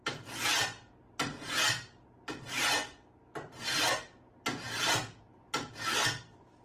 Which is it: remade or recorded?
recorded